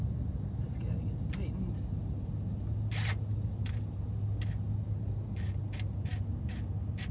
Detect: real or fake real